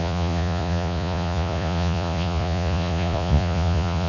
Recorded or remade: remade